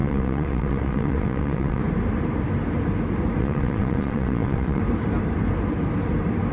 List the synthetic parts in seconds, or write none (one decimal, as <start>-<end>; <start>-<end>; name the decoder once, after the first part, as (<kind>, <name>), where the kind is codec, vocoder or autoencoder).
0.0-1.8 (vocoder, WaveNeXt); 3.4-4.8